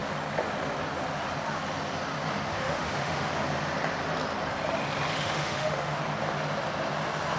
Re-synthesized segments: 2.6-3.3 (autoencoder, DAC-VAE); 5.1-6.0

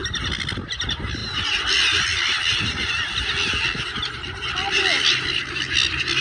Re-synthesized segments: none

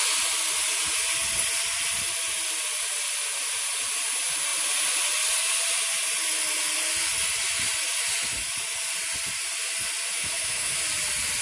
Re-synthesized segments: 10.2-10.8 (autoencoder, DAC-VAE)

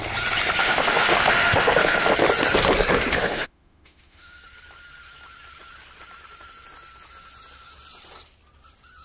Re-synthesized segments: 0.6-2.1 (autoencoder, DAC-VAE); 3.1-4.4

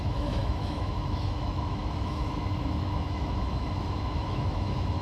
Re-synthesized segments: 0.0-5.0 (autoencoder, DAC-VAE)

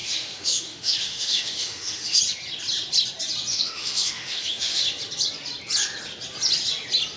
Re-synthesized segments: 0.0-2.2 (autoencoder, DAC-VAE); 3.5-4.8

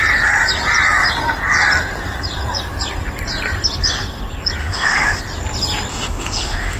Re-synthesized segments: 4.6-5.2 (autoencoder, DAC-VAE); 5.9-6.8